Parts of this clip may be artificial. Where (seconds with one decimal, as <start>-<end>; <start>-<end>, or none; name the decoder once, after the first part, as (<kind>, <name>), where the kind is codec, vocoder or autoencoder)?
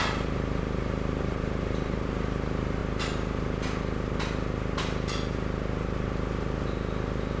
0.0-2.8 (vocoder, BigVGAN v2)